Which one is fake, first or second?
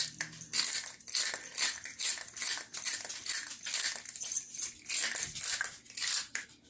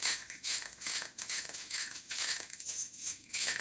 second